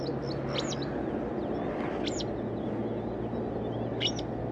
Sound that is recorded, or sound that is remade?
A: recorded